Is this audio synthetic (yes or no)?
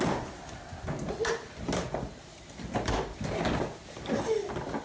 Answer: no